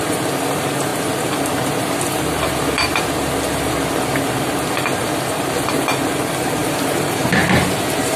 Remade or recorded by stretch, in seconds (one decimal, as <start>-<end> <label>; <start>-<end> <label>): 0.0-6.6 recorded; 6.6-8.2 remade